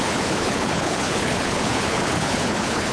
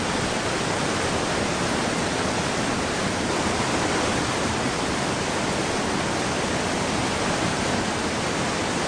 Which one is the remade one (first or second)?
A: first